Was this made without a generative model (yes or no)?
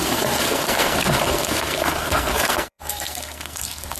no